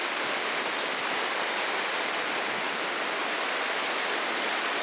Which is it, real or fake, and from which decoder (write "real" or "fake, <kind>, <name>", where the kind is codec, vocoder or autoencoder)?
real